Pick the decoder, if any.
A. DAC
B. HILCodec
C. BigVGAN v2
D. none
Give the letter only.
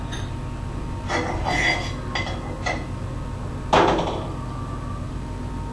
D